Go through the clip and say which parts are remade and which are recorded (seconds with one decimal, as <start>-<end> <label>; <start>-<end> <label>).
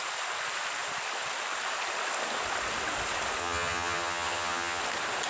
0.0-3.4 recorded; 3.4-4.8 remade; 4.8-5.3 recorded